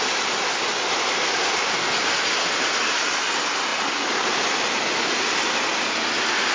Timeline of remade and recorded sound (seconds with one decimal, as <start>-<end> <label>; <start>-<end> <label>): 0.0-6.5 recorded